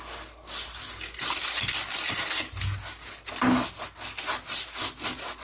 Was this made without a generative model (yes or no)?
yes